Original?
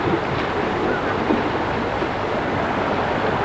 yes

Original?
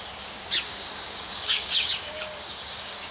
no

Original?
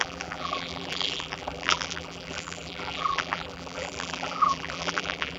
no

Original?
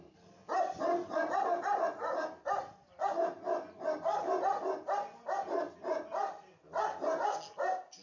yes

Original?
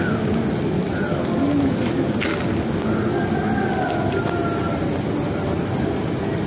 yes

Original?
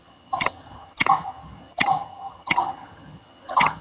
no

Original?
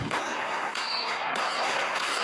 no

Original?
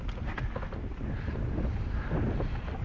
yes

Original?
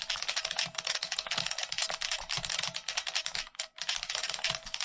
yes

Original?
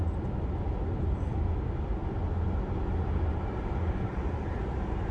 yes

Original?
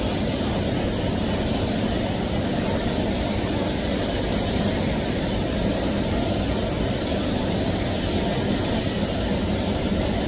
yes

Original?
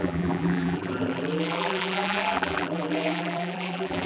no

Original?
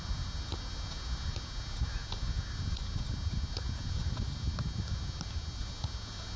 yes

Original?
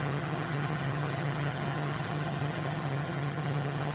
no